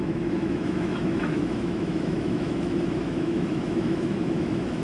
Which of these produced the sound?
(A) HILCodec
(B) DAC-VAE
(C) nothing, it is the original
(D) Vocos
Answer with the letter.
B